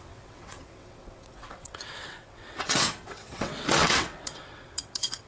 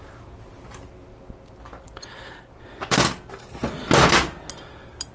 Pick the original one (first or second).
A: second